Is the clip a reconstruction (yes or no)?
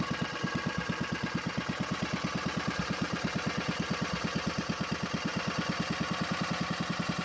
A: no